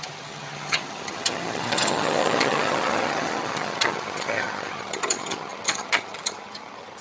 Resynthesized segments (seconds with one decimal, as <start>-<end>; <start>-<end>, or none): 0.0-7.0